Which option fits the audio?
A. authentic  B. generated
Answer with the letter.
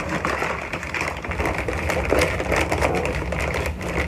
B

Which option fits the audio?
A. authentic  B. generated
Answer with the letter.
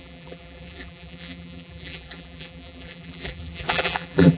B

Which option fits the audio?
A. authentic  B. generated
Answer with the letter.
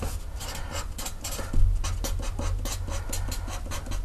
A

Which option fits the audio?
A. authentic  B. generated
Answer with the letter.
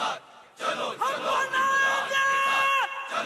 A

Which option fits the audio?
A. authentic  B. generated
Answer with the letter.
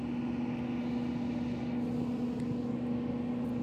A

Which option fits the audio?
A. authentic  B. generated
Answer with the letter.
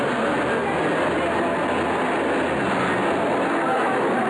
A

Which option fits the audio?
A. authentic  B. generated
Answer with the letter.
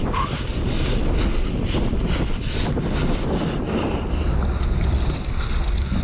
A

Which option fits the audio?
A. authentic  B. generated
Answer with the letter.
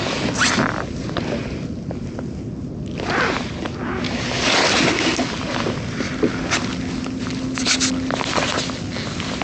A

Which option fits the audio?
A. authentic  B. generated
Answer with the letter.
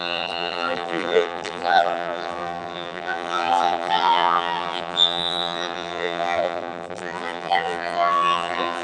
B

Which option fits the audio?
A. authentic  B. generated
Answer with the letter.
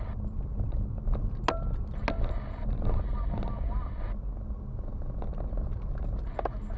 A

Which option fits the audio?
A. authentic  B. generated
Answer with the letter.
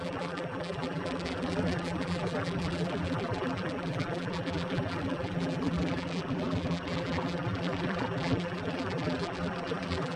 B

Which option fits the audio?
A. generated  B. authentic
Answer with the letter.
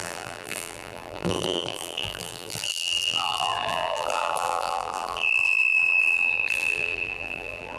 A